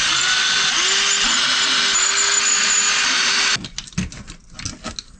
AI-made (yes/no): no